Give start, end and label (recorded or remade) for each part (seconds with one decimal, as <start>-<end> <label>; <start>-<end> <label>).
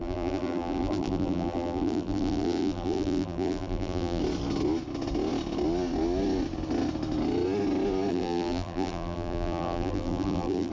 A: 0.0-4.2 remade; 4.2-8.1 recorded; 8.1-10.7 remade